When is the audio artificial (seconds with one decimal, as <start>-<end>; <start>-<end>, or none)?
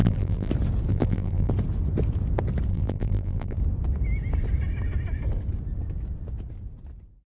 0.0-0.5; 0.9-1.5; 2.7-3.6